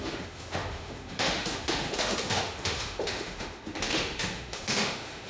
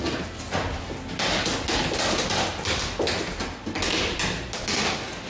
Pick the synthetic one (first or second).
first